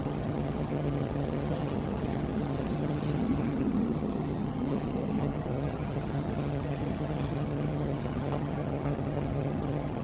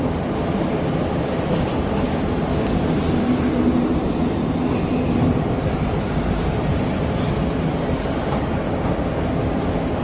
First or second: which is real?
second